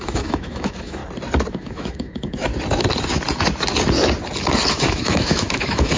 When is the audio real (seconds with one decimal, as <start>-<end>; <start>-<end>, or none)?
1.0-1.5; 2.5-4.7